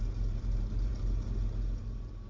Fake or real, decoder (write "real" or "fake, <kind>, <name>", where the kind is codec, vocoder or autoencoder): fake, vocoder, BigVGAN v2